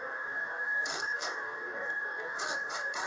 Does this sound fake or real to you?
fake